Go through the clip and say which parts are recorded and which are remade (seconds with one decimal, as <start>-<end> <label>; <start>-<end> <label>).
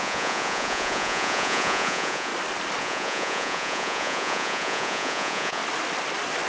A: 0.0-2.3 remade; 2.3-2.8 recorded; 2.8-5.6 remade; 5.6-6.5 recorded